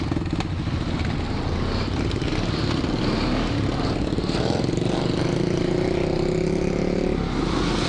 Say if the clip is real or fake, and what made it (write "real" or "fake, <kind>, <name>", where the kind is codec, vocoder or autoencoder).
real